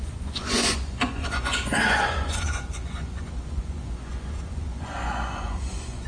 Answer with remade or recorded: remade